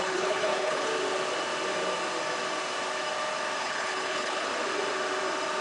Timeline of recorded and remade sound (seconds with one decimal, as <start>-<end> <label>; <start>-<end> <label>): 0.0-0.9 remade; 0.9-3.6 recorded; 3.6-4.5 remade; 4.5-5.6 recorded